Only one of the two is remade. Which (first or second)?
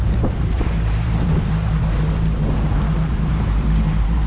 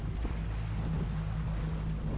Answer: first